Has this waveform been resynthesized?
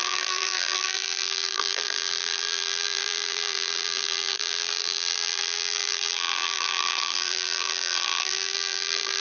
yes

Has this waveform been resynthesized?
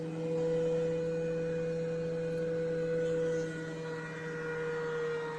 no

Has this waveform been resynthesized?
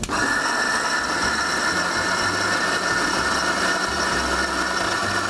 no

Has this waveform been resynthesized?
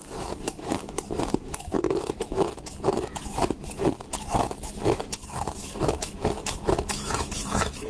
yes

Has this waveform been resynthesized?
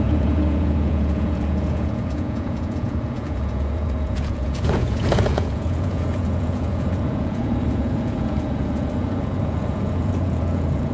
yes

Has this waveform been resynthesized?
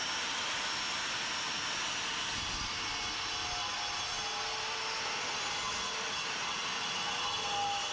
no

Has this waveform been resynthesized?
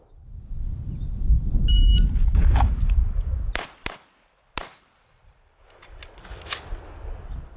no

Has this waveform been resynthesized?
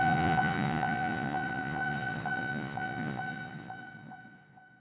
yes